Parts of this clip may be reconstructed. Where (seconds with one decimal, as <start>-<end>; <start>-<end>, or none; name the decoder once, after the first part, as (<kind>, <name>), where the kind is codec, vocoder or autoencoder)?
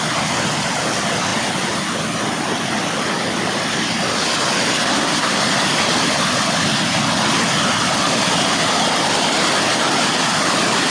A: 4.9-5.4 (codec, SNAC)